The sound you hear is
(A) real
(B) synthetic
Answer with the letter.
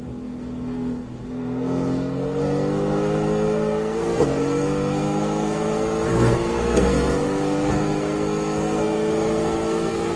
B